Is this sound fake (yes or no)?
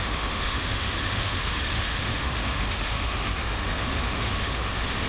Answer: yes